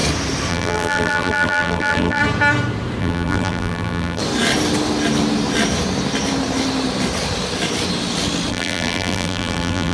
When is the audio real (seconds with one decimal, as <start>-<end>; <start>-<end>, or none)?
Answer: 0.0-0.5; 2.2-3.0; 4.2-8.5